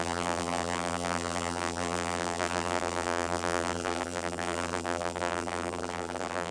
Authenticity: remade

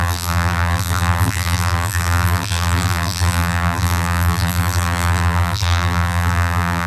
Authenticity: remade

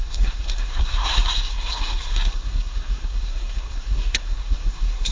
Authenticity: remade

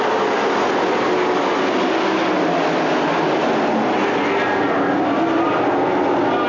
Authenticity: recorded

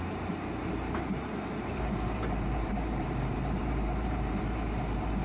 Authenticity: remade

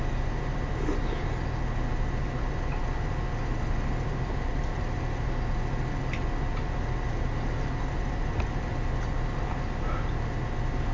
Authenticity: recorded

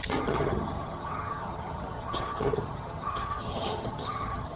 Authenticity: remade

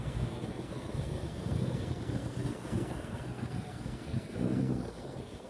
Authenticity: remade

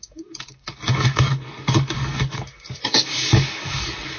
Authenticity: remade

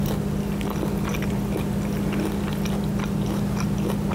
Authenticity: recorded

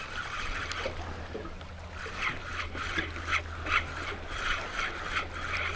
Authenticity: recorded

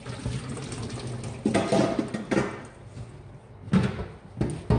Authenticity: recorded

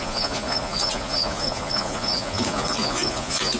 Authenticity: remade